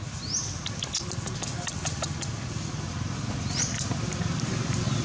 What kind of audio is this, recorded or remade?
recorded